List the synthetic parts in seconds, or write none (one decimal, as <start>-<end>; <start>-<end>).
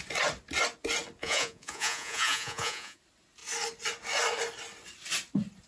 1.2-3.0